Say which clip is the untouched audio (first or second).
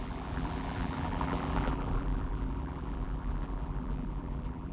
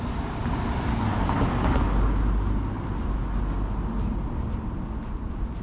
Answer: second